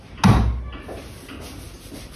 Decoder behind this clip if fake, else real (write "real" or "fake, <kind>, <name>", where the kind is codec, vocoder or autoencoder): real